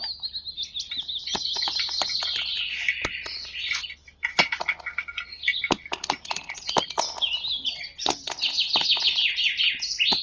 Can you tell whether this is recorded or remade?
recorded